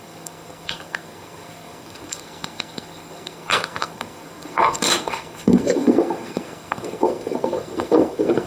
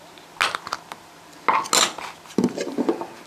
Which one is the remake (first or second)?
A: first